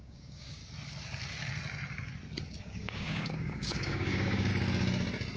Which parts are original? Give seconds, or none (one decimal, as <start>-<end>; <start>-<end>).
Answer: 0.6-2.6; 4.5-5.4